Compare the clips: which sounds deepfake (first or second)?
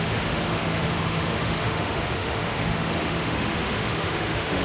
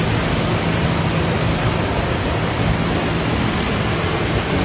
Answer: first